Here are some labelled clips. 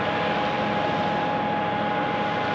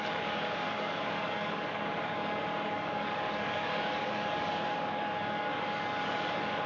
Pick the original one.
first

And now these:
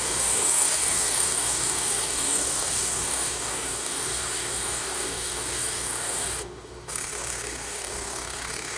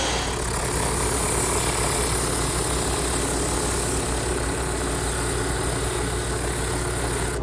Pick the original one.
second